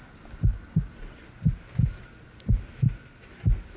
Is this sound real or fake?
real